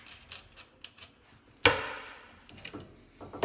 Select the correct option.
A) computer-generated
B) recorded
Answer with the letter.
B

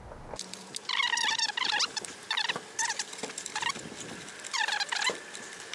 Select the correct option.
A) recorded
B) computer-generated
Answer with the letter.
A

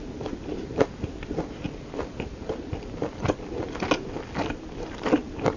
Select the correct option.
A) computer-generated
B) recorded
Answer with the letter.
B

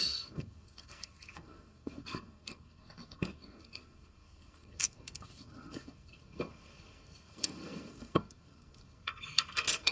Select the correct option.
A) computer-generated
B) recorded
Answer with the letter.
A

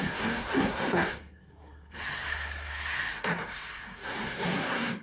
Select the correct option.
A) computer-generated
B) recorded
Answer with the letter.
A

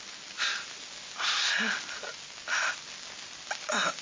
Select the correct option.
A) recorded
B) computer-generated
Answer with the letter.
A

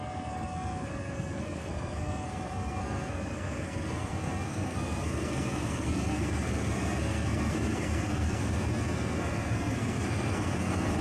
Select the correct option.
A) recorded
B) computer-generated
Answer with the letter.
B